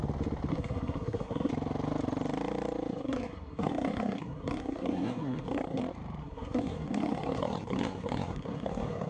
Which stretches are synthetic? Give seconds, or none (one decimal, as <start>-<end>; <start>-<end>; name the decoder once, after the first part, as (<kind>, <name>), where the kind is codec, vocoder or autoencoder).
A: 0.5-1.5 (codec, SNAC); 2.9-5.8; 6.2-9.1